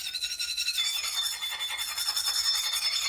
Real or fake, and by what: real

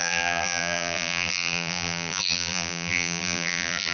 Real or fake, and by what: fake, vocoder, BigVGAN v2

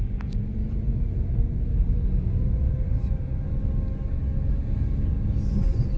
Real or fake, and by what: real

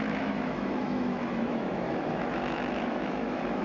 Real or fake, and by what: fake, autoencoder, DAC-VAE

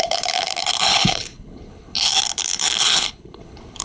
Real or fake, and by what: fake, codec, HILCodec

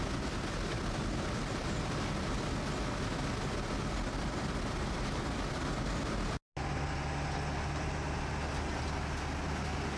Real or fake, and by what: real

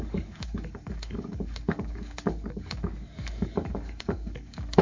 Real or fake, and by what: fake, codec, DAC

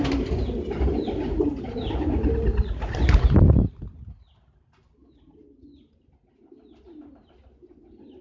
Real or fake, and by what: real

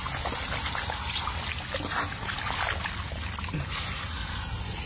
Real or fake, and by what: real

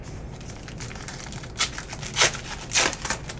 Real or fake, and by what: real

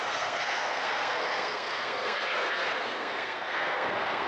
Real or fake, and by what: fake, codec, SNAC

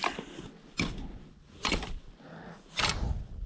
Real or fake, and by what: real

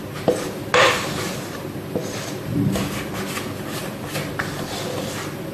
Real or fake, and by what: real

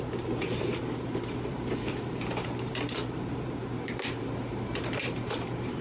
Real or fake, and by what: fake, vocoder, BigVGAN v2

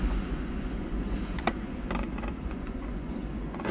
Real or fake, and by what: fake, vocoder, Vocos